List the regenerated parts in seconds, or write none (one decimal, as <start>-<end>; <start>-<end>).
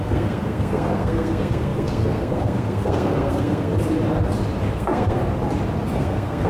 0.0-3.7; 4.7-5.2; 6.0-6.5